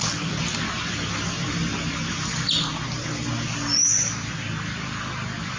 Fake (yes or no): no